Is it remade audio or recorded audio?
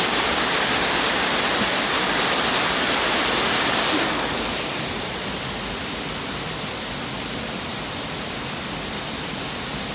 recorded